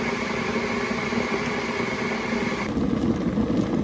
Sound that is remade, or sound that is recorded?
recorded